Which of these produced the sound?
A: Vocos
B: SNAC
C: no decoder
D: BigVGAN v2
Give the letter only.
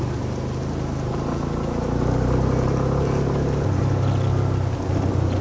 C